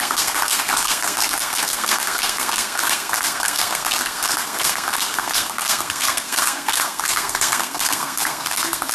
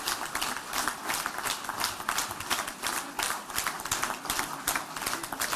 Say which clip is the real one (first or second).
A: second